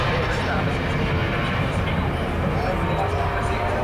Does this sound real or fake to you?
fake